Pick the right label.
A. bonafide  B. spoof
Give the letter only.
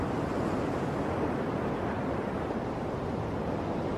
A